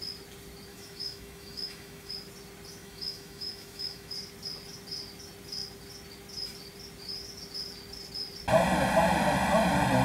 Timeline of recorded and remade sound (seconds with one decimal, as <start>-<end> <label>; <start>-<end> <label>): 0.0-0.7 recorded; 0.7-2.1 remade; 2.1-2.8 recorded; 2.8-4.1 remade; 4.1-10.0 recorded